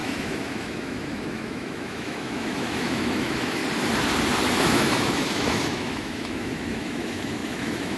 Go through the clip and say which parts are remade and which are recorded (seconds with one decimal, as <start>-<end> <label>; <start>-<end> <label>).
0.0-3.6 remade; 3.6-4.5 recorded; 4.5-8.0 remade

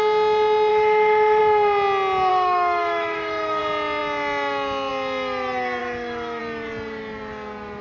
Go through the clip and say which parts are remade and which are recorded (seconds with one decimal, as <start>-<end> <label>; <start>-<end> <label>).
0.0-0.7 recorded; 0.7-1.4 remade; 1.4-2.3 recorded; 2.3-3.6 remade; 3.6-5.8 recorded; 5.8-6.4 remade; 6.4-7.8 recorded